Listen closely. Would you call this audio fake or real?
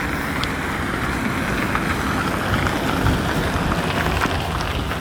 real